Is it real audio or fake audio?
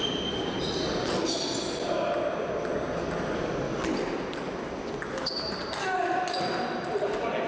real